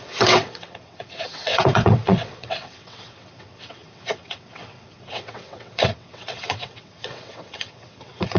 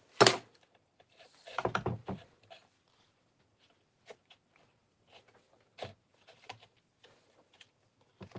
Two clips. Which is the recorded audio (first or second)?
second